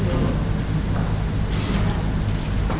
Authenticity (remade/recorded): recorded